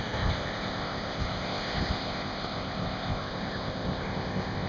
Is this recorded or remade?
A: remade